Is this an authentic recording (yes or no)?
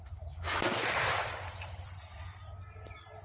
yes